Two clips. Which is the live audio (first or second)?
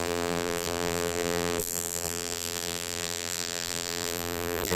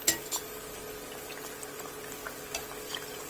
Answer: second